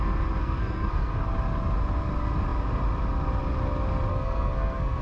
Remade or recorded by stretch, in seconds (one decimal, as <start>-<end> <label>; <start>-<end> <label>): 0.0-0.4 recorded; 0.4-1.2 remade; 1.2-4.1 recorded; 4.1-5.0 remade